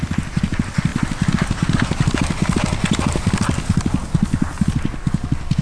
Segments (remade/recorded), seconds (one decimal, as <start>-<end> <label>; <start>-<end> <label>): 0.0-5.6 recorded